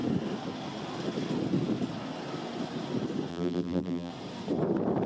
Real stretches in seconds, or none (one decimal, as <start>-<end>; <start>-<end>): 0.0-3.3; 4.1-5.1